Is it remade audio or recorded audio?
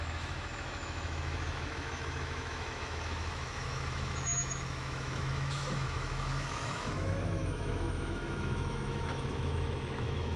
remade